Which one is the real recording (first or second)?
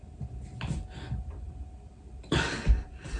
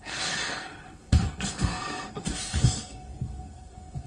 first